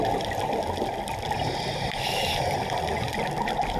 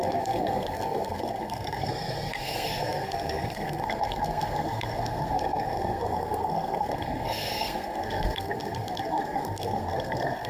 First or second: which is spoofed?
second